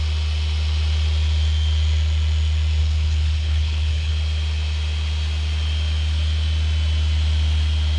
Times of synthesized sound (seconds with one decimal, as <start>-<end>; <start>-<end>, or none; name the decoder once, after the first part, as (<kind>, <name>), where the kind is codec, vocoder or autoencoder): 2.8-4.1 (codec, HILCodec)